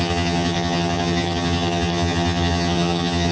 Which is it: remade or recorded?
remade